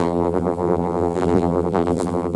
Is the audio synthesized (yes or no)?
yes